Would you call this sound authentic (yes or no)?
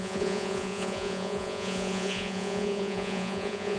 no